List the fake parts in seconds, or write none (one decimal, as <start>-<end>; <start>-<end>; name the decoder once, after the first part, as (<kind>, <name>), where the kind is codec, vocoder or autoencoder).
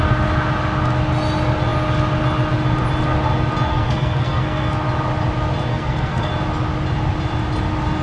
3.7-4.8 (codec, SNAC); 5.7-6.3